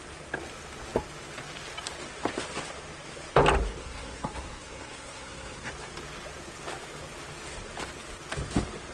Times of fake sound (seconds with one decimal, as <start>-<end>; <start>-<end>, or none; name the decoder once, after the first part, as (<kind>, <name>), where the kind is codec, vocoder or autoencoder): 3.8-5.7 (codec, SNAC)